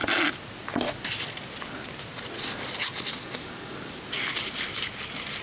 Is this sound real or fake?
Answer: real